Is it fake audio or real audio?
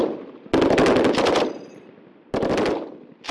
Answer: real